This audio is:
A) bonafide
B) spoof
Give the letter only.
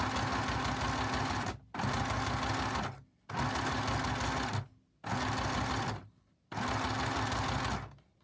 A